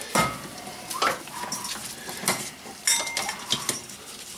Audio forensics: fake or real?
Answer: real